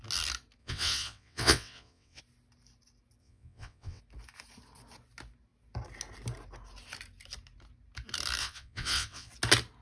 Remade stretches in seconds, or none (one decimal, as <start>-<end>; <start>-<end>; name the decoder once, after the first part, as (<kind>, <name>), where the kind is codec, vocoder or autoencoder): 0.6-2.2 (vocoder, WaveNeXt); 3.2-4.0; 8.4-9.3

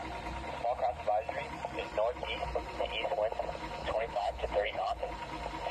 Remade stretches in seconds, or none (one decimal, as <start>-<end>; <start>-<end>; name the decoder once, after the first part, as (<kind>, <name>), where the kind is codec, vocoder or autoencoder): 3.8-5.1 (codec, HILCodec)